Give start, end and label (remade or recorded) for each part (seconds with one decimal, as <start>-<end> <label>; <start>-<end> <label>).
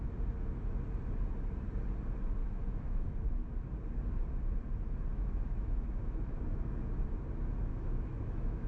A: 0.0-2.4 recorded; 2.4-3.7 remade; 3.7-5.1 recorded; 5.1-6.9 remade; 6.9-7.7 recorded; 7.7-8.7 remade